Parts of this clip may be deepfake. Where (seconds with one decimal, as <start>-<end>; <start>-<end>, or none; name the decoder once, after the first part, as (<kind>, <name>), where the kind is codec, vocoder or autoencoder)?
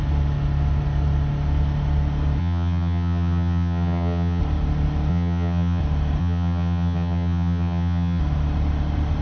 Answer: 2.4-4.4 (vocoder, HiFi-GAN); 5.1-5.8; 6.2-8.2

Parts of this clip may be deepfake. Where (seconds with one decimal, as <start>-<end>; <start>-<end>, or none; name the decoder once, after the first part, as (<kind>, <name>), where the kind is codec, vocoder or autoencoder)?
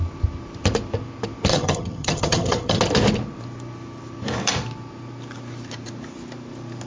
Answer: 1.5-2.8 (vocoder, HiFi-GAN)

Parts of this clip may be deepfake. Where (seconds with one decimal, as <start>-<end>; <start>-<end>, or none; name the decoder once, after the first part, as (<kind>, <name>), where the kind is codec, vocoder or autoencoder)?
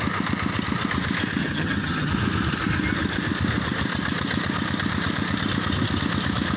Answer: 1.4-2.1 (vocoder, HiFi-GAN)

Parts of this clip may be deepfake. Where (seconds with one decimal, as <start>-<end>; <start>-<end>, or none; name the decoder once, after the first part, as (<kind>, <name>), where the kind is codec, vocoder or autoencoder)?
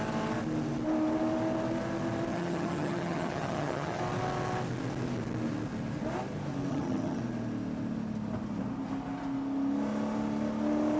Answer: 2.3-4.0 (vocoder, HiFi-GAN); 6.7-7.2